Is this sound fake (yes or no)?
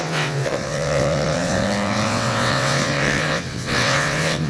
yes